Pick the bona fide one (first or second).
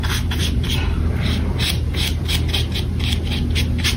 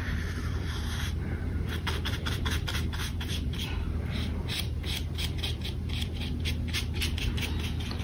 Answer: first